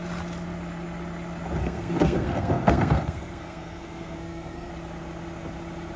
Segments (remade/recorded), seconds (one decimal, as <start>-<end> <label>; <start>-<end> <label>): 0.0-1.6 recorded; 1.6-4.7 remade; 4.7-6.0 recorded